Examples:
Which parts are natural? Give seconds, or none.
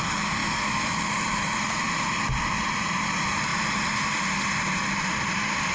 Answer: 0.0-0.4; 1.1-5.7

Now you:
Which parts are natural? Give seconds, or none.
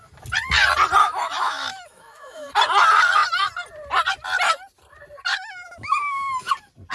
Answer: 0.0-1.0; 2.5-5.3; 6.5-6.9